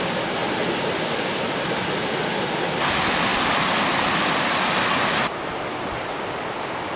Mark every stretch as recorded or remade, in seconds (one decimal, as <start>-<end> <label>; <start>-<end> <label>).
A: 0.0-7.0 recorded